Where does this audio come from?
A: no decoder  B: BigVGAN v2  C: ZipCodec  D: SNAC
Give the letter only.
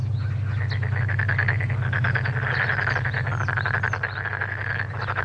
A